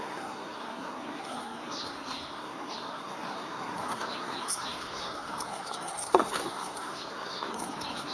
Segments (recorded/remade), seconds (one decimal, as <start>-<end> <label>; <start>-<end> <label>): 0.0-8.1 remade